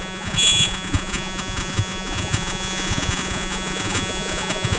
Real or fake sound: fake